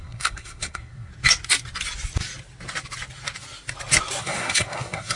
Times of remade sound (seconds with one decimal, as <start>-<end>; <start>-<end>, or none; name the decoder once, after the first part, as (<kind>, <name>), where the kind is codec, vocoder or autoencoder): 0.0-1.1 (codec, SNAC); 4.2-5.2